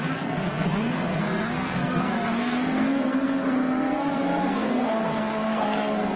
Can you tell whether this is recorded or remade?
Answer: remade